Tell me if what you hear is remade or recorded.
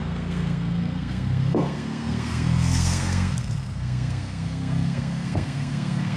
remade